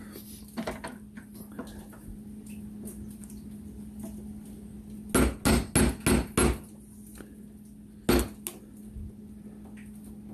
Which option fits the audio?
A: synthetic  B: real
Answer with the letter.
B